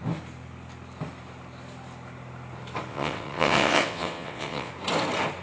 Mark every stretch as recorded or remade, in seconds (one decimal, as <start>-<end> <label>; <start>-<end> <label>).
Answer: 0.0-2.9 recorded; 2.9-4.7 remade; 4.7-5.4 recorded